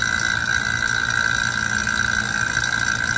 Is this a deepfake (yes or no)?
no